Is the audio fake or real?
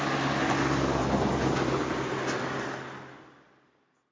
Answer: real